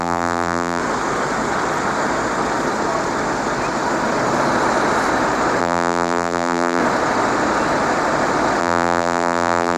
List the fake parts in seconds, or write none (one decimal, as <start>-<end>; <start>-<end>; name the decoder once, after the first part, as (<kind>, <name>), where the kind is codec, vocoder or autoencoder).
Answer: 0.0-0.8 (vocoder, BigVGAN v2); 5.6-6.8; 8.6-9.8